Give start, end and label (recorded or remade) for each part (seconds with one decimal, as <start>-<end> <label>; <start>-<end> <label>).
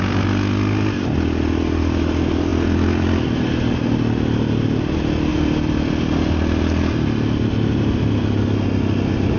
0.0-9.4 recorded